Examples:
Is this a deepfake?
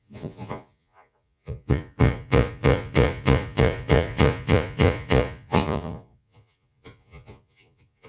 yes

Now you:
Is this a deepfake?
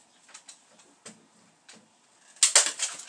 no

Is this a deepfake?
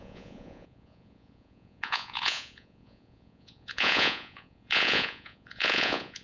yes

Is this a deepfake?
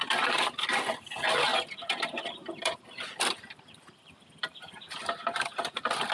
no